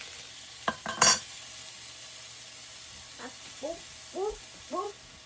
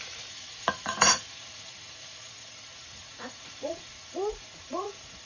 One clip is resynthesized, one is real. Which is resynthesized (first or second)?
second